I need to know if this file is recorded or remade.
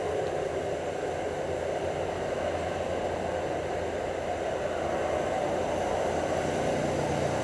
recorded